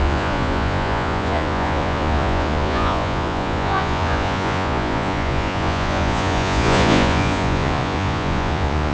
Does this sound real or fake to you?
fake